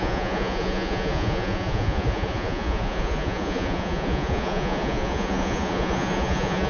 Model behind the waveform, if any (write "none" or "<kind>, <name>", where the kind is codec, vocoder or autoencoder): vocoder, Vocos